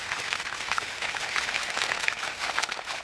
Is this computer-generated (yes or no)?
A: yes